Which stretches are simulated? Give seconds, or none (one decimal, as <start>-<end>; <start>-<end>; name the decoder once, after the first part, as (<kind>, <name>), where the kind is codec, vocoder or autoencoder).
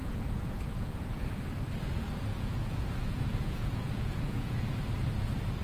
0.0-1.4 (vocoder, Vocos); 2.3-4.8